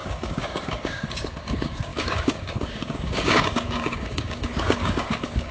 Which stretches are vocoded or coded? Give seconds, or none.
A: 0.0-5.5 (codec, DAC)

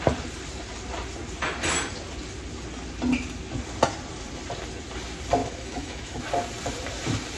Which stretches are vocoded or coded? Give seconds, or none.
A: 5.4-6.2 (autoencoder, DAC-VAE)